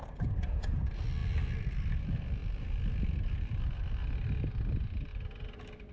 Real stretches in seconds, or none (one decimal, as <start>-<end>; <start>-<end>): 0.0-5.9